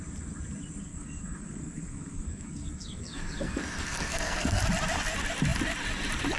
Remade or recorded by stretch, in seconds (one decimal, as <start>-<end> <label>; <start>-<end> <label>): 0.0-0.8 recorded; 0.8-4.6 remade; 4.6-6.4 recorded